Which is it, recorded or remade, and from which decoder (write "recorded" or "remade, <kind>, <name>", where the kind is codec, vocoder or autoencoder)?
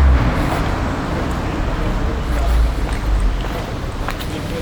remade, vocoder, BigVGAN v2